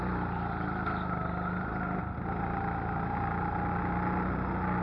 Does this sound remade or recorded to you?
recorded